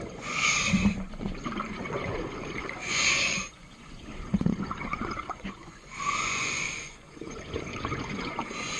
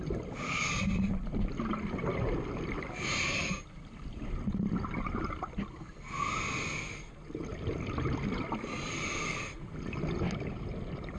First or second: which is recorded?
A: second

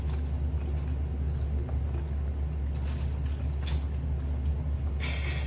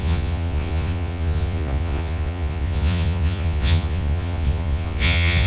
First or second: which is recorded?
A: first